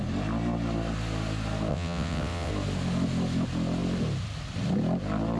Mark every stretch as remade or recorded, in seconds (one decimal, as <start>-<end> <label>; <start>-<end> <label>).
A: 0.0-1.7 recorded; 1.7-2.5 remade; 2.5-5.4 recorded